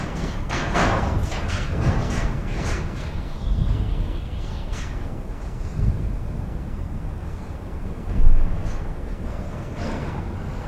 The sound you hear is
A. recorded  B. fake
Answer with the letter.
B